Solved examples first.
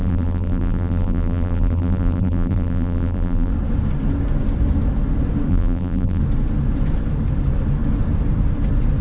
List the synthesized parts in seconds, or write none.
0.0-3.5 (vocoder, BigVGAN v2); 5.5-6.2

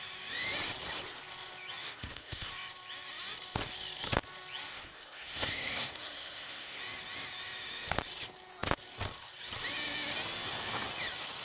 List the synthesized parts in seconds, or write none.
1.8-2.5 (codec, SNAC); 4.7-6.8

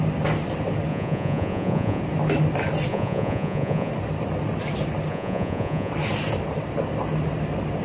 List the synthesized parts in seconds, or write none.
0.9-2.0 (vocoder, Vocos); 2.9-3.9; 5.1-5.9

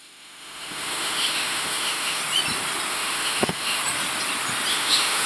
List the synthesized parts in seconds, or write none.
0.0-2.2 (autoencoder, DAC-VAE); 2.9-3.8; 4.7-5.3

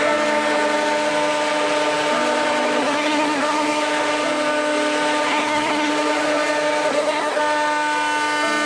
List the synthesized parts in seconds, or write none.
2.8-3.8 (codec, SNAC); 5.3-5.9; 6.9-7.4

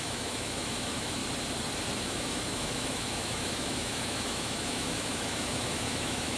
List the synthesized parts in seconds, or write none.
0.0-1.2 (autoencoder, DAC-VAE); 2.0-6.4